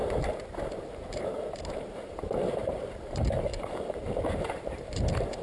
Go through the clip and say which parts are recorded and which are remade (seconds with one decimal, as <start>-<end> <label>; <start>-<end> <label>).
0.0-5.4 remade